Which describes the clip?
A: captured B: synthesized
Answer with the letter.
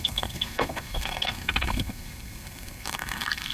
B